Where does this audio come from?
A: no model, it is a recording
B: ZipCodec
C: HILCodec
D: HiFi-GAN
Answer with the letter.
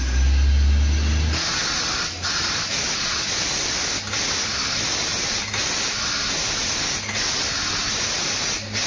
A